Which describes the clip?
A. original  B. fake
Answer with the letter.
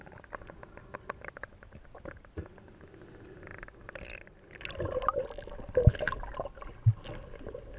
A